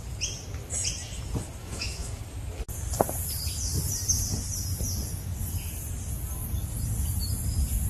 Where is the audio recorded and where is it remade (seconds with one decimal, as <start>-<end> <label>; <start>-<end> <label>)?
0.0-1.6 recorded; 1.6-2.2 remade; 2.2-7.9 recorded